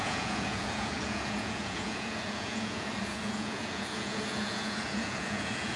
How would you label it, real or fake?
fake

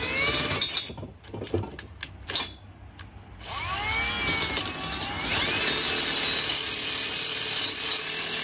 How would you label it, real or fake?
real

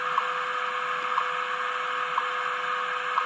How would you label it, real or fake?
real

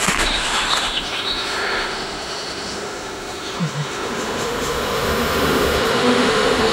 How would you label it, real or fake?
fake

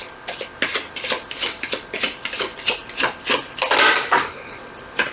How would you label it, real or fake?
real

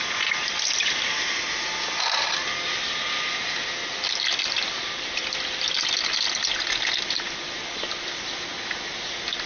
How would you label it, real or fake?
real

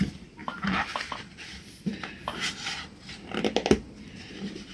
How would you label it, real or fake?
real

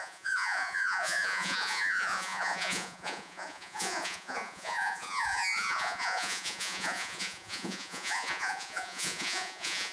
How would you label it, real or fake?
fake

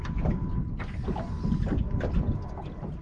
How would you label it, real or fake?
real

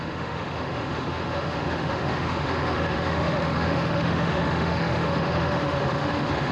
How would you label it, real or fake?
fake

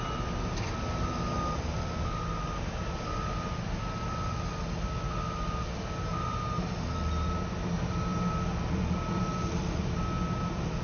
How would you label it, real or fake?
real